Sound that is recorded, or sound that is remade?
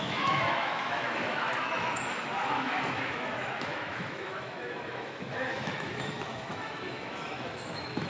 remade